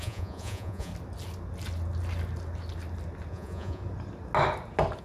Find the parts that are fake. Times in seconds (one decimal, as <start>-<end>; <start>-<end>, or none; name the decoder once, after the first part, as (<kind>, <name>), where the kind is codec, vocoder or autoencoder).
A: 0.0-0.9 (vocoder, Vocos); 3.3-3.8